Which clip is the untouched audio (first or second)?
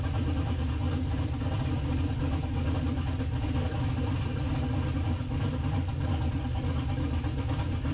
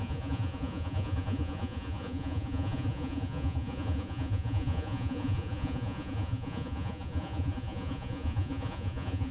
first